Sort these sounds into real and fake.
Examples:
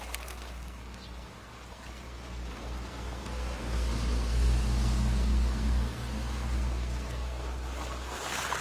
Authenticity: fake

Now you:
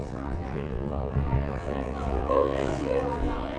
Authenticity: fake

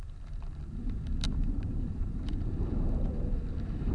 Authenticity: real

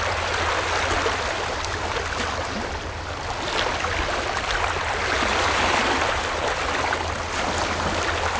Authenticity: real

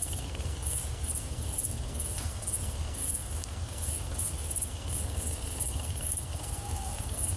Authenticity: fake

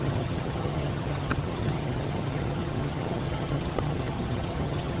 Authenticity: fake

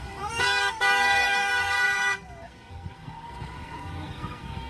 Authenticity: fake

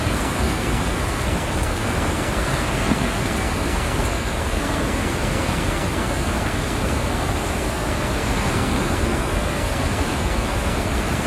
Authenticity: fake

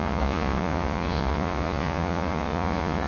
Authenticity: fake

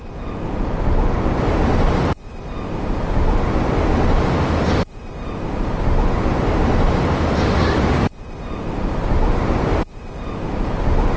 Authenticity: real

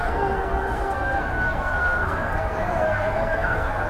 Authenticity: fake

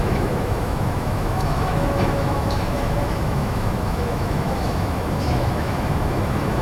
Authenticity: fake